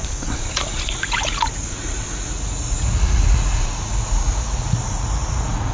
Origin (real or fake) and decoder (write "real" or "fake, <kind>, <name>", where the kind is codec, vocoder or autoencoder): fake, vocoder, Vocos